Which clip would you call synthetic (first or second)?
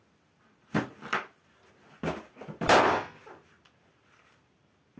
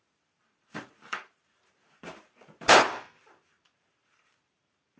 second